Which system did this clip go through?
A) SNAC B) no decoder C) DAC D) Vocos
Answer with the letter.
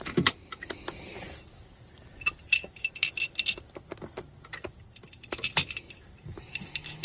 B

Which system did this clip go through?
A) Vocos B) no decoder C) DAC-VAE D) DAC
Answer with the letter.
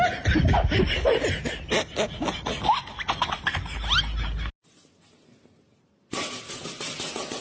B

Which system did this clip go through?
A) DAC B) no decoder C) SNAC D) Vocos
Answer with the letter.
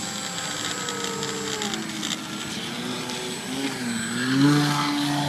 B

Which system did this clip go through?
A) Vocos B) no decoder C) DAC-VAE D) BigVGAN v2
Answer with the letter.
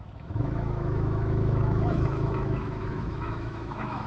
C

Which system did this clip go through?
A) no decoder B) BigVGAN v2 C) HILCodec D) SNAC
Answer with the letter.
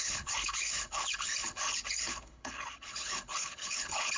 C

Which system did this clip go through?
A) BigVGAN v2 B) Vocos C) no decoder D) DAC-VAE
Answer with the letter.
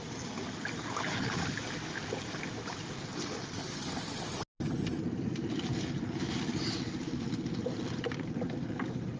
C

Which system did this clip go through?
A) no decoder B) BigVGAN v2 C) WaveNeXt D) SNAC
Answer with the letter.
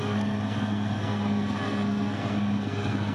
D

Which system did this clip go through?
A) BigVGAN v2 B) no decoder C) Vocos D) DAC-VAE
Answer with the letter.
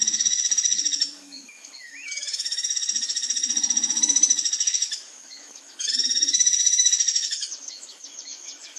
D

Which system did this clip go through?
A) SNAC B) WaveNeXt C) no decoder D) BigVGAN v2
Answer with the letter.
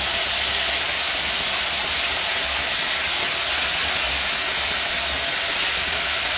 C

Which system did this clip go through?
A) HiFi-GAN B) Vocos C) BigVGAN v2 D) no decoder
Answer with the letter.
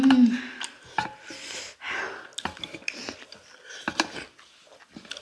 D